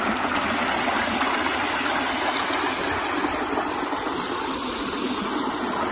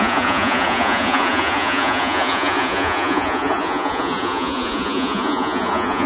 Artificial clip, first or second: second